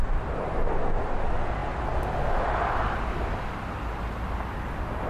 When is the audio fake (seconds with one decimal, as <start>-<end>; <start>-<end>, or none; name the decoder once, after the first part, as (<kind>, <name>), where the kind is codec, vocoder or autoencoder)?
none